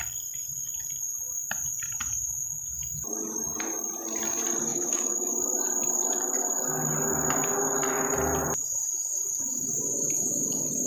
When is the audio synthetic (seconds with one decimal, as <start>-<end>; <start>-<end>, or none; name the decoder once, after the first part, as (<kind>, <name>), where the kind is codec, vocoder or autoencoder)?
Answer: 4.7-5.3 (autoencoder, DAC-VAE)